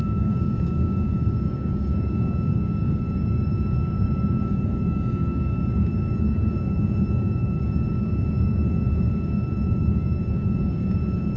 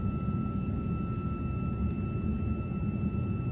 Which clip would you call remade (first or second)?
first